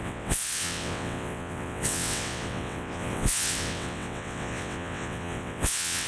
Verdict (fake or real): fake